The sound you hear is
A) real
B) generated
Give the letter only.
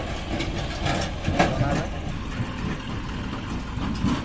A